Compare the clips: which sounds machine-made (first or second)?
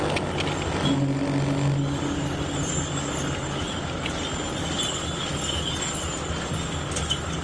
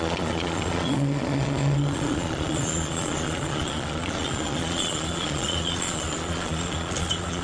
second